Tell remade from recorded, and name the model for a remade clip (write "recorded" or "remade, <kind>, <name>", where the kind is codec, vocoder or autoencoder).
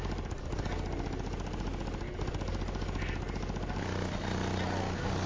recorded